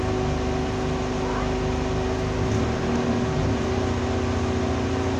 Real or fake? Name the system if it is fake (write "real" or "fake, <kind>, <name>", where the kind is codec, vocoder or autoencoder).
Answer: real